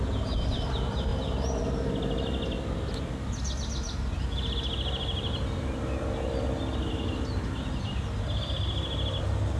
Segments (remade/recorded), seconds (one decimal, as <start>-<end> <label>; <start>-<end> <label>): 0.0-9.6 recorded